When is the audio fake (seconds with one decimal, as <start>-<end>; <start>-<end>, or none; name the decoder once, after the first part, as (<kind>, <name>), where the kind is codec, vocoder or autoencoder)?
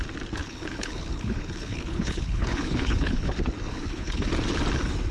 0.4-3.3 (codec, HILCodec); 3.7-4.3